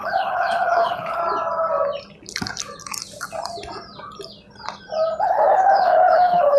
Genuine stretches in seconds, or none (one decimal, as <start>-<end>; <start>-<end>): 1.2-5.2